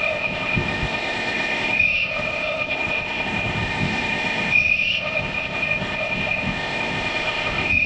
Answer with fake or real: fake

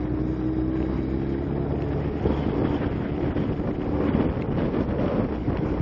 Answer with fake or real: real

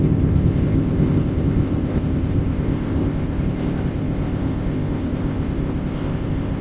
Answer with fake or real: fake